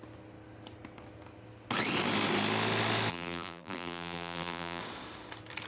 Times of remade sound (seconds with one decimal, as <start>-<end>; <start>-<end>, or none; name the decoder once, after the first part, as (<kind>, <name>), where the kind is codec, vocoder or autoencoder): 3.1-4.8 (vocoder, BigVGAN v2)

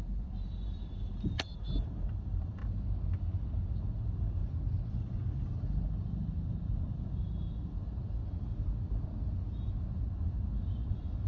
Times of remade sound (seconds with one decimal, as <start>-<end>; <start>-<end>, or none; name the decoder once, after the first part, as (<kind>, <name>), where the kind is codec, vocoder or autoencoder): 0.0-2.6 (vocoder, BigVGAN v2); 3.7-4.4; 4.9-8.2; 9.9-11.3

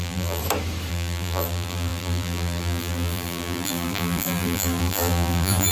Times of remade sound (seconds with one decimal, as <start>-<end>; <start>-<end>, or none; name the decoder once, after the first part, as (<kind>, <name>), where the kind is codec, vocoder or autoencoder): 0.0-0.4 (vocoder, BigVGAN v2); 0.9-5.7